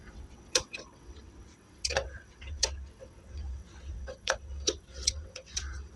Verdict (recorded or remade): remade